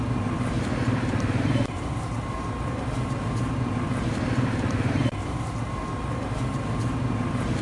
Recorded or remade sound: remade